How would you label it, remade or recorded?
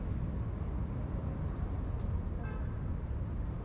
recorded